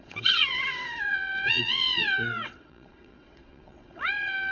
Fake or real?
fake